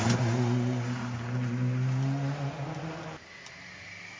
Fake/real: real